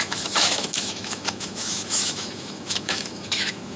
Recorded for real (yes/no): no